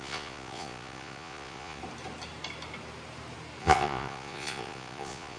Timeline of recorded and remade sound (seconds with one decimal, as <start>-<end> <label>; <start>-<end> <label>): 0.0-1.8 remade; 1.8-3.6 recorded; 3.6-5.4 remade